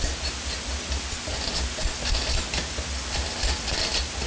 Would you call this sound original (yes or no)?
yes